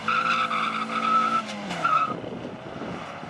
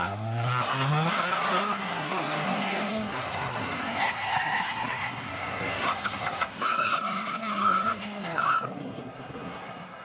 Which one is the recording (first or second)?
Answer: first